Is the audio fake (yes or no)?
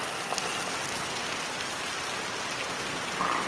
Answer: no